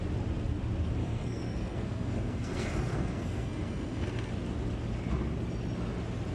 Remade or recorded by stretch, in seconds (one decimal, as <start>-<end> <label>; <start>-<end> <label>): 0.0-1.0 recorded; 1.0-4.3 remade; 4.3-6.3 recorded